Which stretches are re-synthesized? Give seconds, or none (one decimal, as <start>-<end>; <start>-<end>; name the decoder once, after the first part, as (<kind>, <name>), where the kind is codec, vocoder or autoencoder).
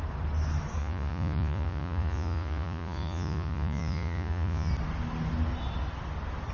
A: 0.8-4.7 (vocoder, Vocos)